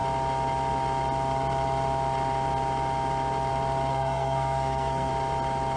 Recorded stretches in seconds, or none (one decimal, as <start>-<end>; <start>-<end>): 0.0-3.9; 5.1-5.8